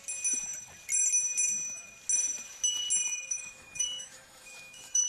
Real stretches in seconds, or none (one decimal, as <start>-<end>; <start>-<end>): 0.0-3.1

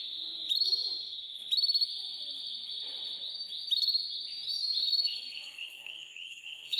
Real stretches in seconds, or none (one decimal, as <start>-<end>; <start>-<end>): 0.0-4.8

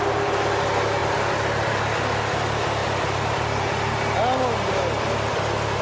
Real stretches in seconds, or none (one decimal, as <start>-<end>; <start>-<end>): 0.0-1.0; 1.7-2.8; 4.0-5.8

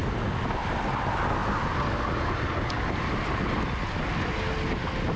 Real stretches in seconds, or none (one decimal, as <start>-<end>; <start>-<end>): 0.0-5.2

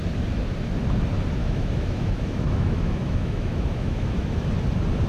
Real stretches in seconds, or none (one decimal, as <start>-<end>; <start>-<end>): 0.0-1.4; 4.5-5.1

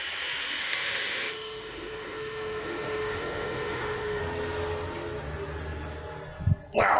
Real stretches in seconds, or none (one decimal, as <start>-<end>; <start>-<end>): 0.0-0.6; 4.2-7.0

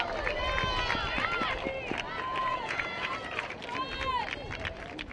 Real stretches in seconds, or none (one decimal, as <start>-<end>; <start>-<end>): 0.0-2.4; 3.6-5.1